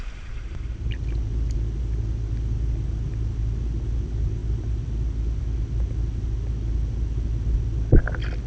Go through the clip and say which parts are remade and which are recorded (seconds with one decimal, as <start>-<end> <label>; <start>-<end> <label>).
0.0-8.5 recorded